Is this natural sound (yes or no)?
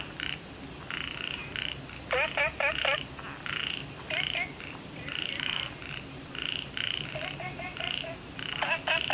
yes